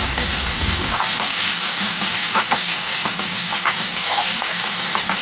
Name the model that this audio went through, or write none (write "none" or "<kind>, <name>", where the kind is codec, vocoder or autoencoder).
codec, DAC